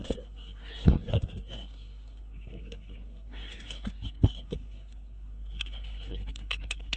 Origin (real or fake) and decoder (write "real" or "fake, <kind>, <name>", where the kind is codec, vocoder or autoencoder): fake, codec, SNAC